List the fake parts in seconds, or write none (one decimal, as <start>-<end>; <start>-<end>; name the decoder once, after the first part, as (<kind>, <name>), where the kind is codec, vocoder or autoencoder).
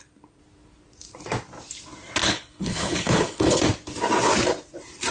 2.2-3.6 (codec, HILCodec)